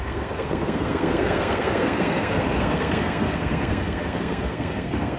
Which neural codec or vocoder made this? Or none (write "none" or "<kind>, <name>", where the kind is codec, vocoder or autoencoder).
codec, SNAC